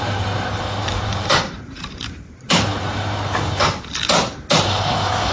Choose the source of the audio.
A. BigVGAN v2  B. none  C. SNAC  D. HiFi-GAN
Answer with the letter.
A